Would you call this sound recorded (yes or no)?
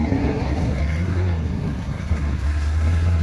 no